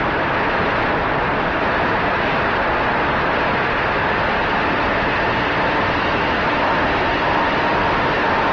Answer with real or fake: real